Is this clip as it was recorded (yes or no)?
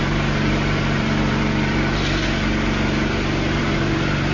no